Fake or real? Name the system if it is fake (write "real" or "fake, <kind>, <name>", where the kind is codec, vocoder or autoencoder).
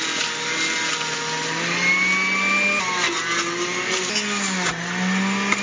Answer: real